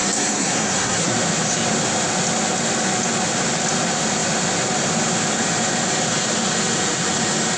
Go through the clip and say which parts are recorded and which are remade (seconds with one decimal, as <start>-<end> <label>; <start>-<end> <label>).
0.0-1.1 remade; 1.1-7.6 recorded